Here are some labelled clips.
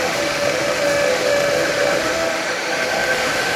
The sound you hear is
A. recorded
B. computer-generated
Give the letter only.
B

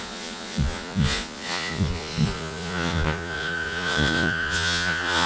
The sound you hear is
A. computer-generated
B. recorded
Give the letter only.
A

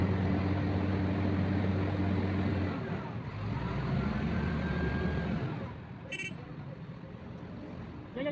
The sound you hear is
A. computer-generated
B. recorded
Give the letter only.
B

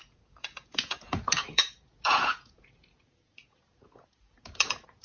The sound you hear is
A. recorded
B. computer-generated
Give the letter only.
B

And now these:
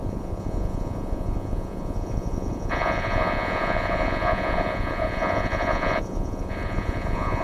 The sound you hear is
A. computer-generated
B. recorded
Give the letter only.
A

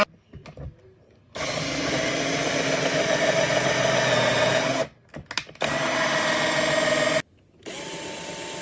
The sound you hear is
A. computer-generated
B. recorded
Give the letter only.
B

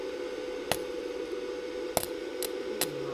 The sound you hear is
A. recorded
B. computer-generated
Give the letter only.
A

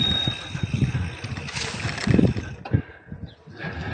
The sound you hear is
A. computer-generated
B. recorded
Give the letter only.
B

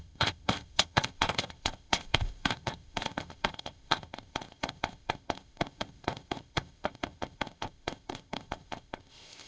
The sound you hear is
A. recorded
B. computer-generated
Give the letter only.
B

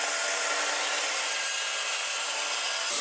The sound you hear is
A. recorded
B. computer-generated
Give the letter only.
A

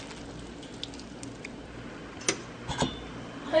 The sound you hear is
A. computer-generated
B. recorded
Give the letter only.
B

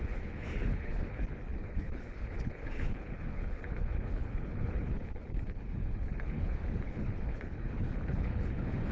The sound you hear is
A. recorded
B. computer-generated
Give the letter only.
B